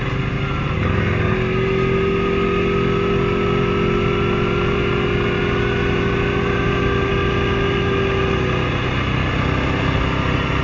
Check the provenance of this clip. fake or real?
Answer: real